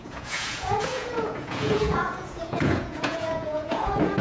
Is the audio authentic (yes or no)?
no